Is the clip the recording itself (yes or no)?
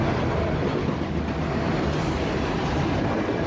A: yes